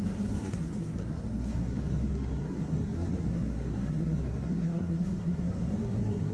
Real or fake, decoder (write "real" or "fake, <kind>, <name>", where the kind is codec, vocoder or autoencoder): fake, codec, SNAC